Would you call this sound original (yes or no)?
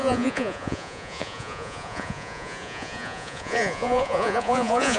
no